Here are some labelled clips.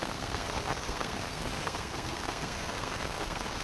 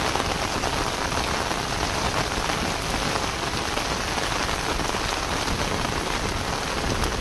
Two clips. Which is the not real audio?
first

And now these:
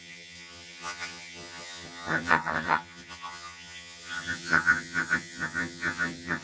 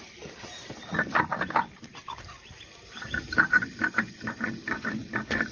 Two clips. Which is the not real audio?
first